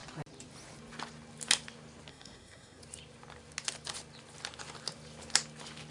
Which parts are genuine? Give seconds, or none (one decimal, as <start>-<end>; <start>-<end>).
0.0-2.1; 2.8-5.9